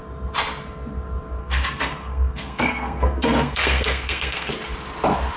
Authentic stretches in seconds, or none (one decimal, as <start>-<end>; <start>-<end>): 0.0-1.4; 4.5-5.4